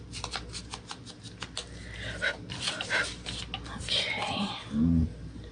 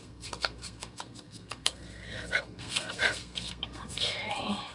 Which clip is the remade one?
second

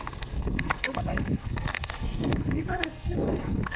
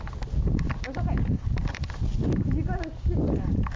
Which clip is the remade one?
first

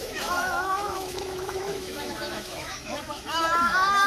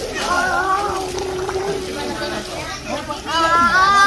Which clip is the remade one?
first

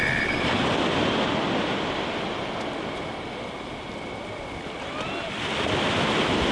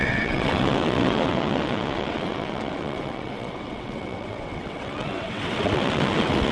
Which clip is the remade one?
second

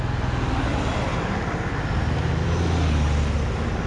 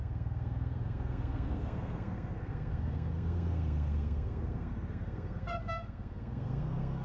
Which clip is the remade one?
second